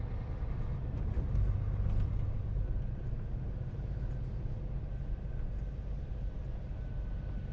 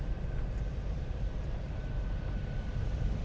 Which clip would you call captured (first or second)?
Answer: first